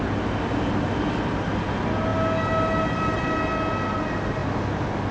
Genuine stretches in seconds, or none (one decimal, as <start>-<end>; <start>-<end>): 0.0-5.1